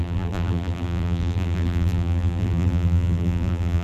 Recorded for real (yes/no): no